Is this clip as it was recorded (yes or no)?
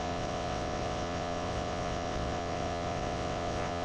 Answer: no